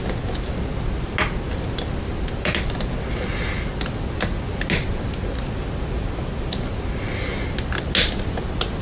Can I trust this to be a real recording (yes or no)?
yes